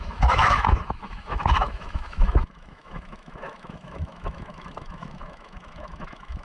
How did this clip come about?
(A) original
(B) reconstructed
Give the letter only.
B